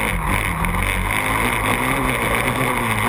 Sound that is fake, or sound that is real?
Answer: real